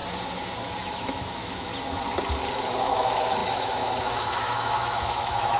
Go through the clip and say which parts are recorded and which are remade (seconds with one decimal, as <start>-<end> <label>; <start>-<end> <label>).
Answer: 0.0-0.8 recorded; 0.8-1.7 remade; 1.7-2.8 recorded; 2.8-5.6 remade